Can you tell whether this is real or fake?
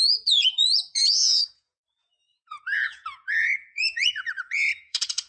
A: fake